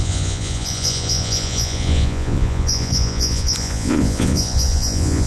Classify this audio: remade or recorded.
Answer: remade